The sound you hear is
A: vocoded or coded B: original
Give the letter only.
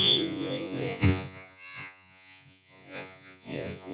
A